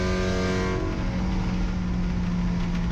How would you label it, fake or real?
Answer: real